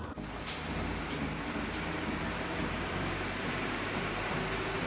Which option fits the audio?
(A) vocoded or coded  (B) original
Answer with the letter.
A